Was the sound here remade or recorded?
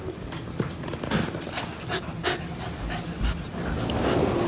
recorded